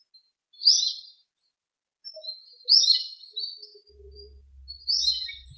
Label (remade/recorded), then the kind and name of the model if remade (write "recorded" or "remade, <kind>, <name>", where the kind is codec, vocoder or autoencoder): recorded